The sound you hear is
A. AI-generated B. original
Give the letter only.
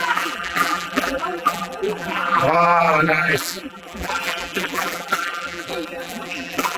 A